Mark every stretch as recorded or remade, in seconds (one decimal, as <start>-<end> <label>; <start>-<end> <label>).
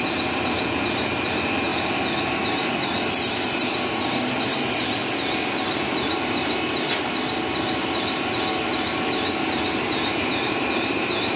0.0-11.4 recorded